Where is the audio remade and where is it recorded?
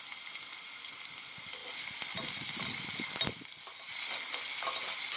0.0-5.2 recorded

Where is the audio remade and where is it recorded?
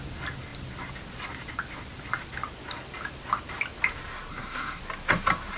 0.0-4.3 recorded; 4.3-4.8 remade; 4.8-5.6 recorded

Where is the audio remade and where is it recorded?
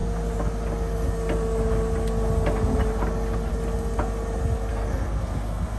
0.0-4.7 recorded; 4.7-5.8 remade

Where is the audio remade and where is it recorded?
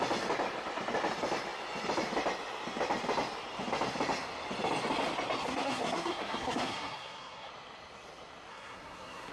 0.0-5.4 recorded; 5.4-7.5 remade; 7.5-8.5 recorded; 8.5-9.3 remade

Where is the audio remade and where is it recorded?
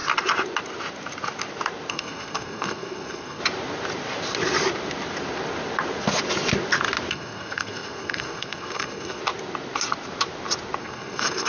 0.0-1.9 recorded; 1.9-3.4 remade; 3.4-7.1 recorded; 7.1-9.2 remade; 9.2-10.8 recorded; 10.8-11.5 remade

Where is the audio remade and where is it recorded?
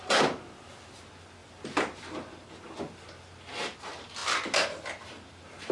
0.0-5.7 recorded